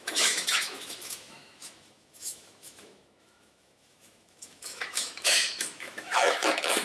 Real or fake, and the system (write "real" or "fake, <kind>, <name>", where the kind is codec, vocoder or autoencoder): fake, autoencoder, DAC-VAE